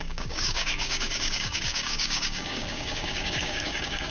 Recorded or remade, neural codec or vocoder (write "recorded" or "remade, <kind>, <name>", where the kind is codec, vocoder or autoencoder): remade, codec, DAC